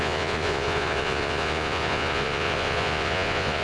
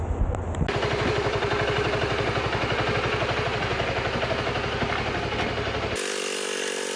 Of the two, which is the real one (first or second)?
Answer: second